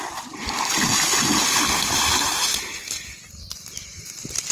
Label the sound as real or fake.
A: real